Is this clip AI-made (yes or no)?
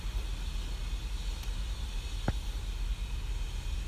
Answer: no